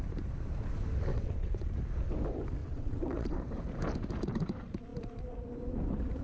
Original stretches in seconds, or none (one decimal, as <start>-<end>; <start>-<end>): 0.0-1.1; 1.7-2.6; 3.4-6.2